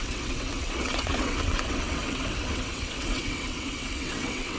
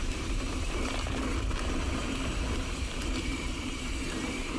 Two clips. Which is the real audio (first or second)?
second